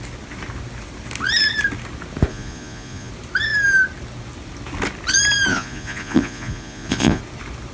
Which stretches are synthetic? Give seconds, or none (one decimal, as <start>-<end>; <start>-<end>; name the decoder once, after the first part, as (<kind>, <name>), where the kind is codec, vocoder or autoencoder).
2.3-3.1 (vocoder, Vocos); 5.5-7.2